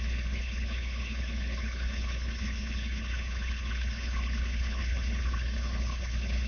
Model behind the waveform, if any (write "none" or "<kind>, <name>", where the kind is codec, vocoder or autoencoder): codec, HILCodec